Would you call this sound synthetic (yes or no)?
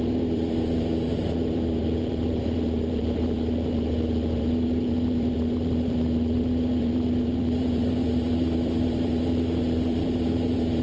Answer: yes